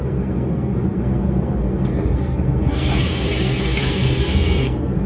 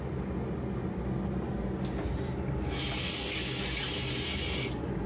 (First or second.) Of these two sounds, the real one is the second